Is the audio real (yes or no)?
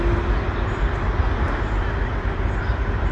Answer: yes